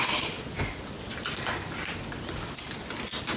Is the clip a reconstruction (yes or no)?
no